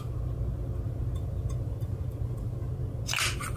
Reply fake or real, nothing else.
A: real